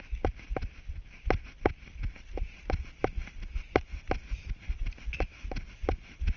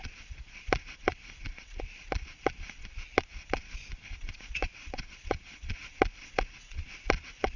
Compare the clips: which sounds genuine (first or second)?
first